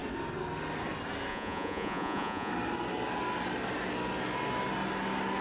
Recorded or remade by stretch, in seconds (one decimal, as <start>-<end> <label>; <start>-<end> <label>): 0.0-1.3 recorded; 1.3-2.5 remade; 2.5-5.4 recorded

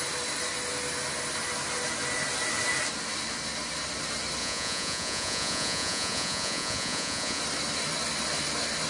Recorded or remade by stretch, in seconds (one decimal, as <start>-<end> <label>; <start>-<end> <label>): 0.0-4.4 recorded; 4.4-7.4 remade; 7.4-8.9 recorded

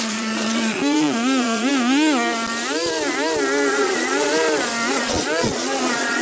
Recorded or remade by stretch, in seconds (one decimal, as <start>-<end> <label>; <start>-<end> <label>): 0.0-1.7 remade; 1.7-3.7 recorded; 3.7-4.3 remade; 4.3-4.9 recorded; 4.9-6.2 remade

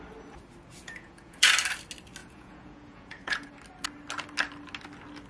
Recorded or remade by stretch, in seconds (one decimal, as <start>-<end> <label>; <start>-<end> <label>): 0.0-0.7 recorded; 0.7-1.5 remade; 1.5-2.2 recorded; 2.2-3.5 remade; 3.5-5.3 recorded

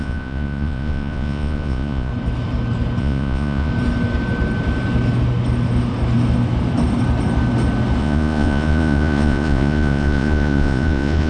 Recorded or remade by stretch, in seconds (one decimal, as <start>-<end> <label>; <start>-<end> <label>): 0.0-2.1 remade; 2.1-3.0 recorded; 3.0-3.7 remade; 3.7-8.0 recorded; 8.0-11.3 remade